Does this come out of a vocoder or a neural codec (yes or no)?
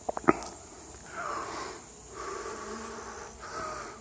no